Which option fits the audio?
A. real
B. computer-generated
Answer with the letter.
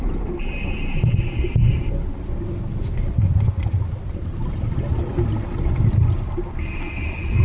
A